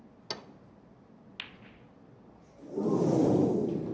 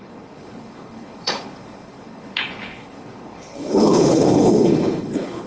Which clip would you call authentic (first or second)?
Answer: first